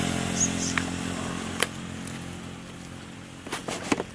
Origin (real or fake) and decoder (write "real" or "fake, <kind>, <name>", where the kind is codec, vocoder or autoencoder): real